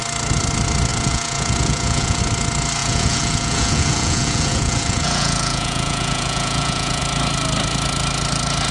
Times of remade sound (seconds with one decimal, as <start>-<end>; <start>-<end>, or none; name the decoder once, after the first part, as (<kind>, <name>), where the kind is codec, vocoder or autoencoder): 0.9-2.2 (vocoder, Vocos); 2.8-7.0